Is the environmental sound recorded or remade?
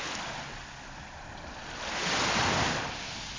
recorded